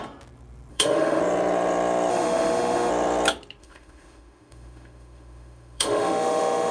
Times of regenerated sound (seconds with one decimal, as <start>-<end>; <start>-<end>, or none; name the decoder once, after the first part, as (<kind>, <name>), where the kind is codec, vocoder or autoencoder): 0.7-1.2 (autoencoder, DAC-VAE); 2.1-2.9; 3.6-6.7